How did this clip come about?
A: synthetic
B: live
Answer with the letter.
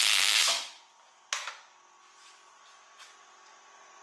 B